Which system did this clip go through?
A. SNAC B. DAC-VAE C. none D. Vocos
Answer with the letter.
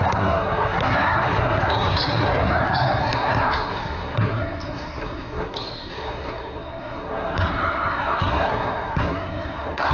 A